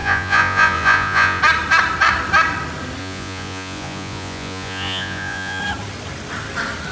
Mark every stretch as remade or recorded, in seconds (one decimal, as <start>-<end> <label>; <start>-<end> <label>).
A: 0.0-1.4 remade; 1.4-3.0 recorded; 3.0-5.6 remade; 5.6-6.9 recorded